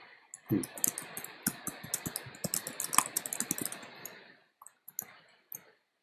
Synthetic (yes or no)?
no